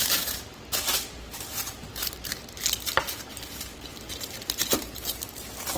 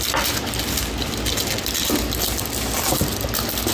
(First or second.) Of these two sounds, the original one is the second